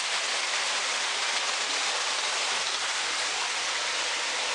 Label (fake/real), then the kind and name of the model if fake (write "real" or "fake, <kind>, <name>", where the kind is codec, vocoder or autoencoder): real